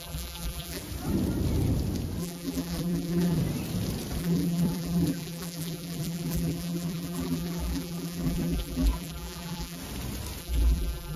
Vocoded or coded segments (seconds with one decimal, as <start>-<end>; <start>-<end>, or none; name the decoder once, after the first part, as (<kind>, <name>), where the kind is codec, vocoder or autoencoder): 0.0-0.8 (vocoder, BigVGAN v2); 2.2-3.4; 4.2-9.8; 10.4-11.2